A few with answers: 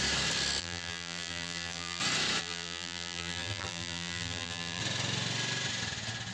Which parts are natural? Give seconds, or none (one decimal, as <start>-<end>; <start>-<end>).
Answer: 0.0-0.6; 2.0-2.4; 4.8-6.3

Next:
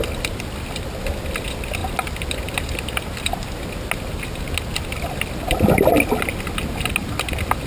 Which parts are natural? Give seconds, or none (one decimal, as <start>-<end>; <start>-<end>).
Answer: 0.0-7.7

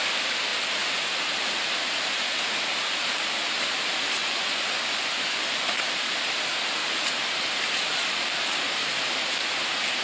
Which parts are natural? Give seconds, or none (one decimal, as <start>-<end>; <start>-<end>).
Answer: 0.0-4.2; 5.8-10.0

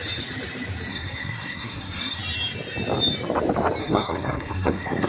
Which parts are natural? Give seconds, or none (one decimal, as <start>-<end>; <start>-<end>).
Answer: 0.0-0.9; 2.2-3.8